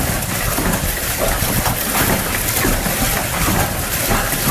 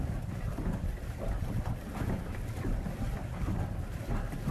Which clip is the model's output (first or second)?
second